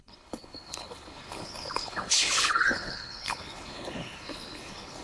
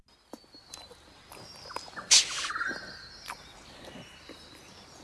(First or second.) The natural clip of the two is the second